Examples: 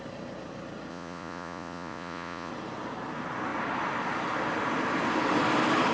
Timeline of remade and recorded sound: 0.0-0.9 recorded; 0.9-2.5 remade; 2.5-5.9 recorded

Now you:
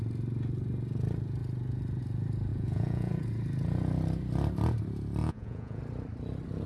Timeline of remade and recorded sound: 0.0-2.5 recorded; 2.5-3.1 remade; 3.1-5.2 recorded; 5.2-5.8 remade; 5.8-6.7 recorded